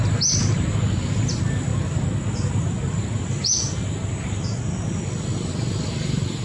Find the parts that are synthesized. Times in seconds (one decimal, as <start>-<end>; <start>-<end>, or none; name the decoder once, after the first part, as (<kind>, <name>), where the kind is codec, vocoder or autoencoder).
none